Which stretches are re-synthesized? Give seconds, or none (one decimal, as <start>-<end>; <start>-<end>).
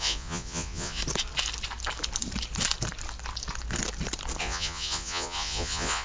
0.0-1.0; 4.4-6.0